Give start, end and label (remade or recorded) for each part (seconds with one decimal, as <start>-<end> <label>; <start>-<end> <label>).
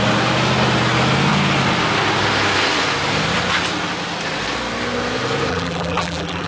0.0-5.5 recorded; 5.5-6.5 remade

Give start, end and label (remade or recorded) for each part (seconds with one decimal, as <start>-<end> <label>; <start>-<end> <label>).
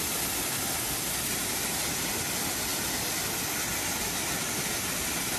0.0-5.4 recorded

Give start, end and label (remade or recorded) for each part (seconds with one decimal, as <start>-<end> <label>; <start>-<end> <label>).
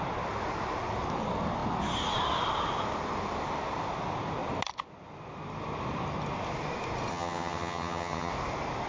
0.0-7.1 recorded; 7.1-8.3 remade; 8.3-8.9 recorded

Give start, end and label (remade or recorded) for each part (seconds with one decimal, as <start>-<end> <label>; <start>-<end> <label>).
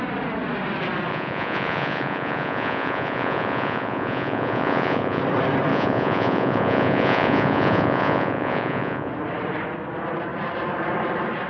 0.0-1.1 recorded; 1.1-5.2 remade; 5.2-5.7 recorded; 5.7-9.1 remade; 9.1-11.5 recorded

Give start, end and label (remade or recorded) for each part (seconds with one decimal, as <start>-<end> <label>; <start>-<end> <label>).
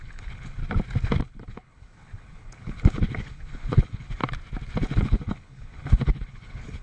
0.0-0.6 remade; 0.6-1.2 recorded; 1.2-4.2 remade; 4.2-4.8 recorded; 4.8-6.8 remade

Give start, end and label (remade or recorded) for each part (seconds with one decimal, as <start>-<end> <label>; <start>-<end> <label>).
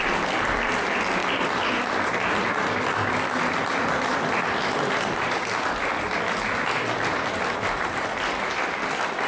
0.0-9.3 recorded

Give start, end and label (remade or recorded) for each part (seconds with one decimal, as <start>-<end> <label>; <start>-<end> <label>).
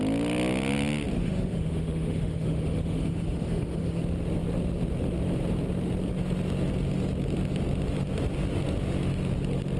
0.0-1.2 recorded; 1.2-4.0 remade; 4.0-9.8 recorded